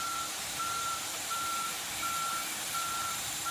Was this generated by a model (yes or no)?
yes